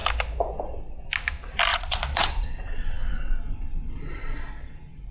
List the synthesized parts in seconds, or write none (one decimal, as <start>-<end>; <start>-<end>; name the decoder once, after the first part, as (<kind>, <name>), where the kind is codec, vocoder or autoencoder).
1.7-4.5 (vocoder, Vocos)